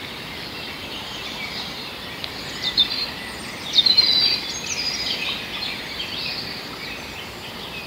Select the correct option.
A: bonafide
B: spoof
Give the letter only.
A